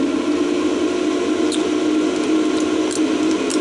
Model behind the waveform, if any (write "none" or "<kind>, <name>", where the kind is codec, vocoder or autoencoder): none